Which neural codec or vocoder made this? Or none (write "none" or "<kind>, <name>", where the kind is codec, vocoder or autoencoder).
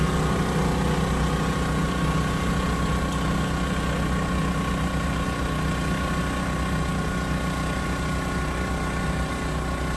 none